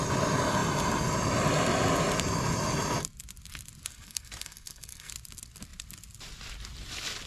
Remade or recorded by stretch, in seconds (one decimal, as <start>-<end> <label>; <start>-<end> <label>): 0.0-3.9 recorded; 3.9-5.1 remade; 5.1-7.3 recorded